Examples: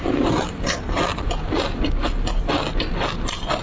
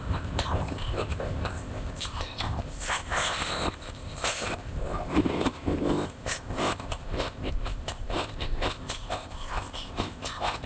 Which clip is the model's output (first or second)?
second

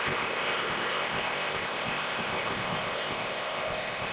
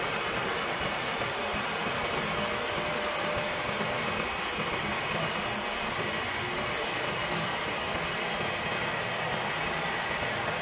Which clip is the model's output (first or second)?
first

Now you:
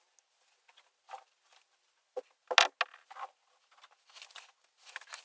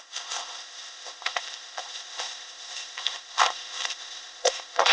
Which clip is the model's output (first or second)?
second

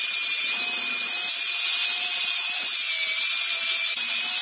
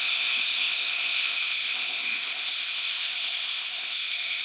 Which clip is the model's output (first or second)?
second